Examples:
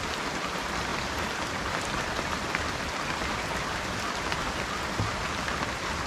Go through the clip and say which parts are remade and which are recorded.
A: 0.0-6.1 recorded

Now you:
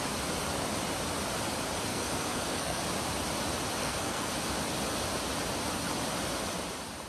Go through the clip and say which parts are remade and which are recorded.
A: 0.0-1.9 recorded; 1.9-2.8 remade; 2.8-3.8 recorded; 3.8-4.3 remade; 4.3-7.1 recorded

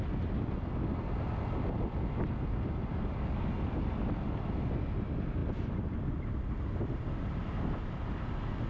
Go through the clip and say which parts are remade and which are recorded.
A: 0.0-2.9 recorded; 2.9-3.5 remade; 3.5-8.7 recorded